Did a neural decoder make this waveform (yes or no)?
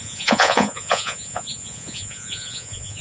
yes